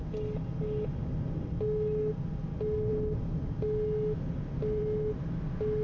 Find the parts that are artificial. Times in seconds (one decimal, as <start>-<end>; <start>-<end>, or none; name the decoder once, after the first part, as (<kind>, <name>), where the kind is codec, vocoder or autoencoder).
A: none